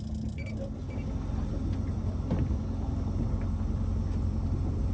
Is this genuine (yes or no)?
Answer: yes